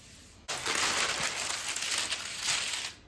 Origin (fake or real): real